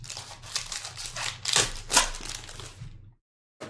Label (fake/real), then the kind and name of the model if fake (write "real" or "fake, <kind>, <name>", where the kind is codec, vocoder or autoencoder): real